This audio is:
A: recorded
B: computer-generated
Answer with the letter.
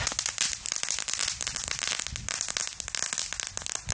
A